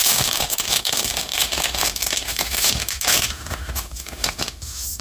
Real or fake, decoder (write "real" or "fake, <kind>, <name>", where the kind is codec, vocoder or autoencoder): fake, autoencoder, DAC-VAE